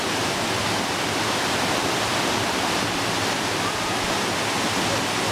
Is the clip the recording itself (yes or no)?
yes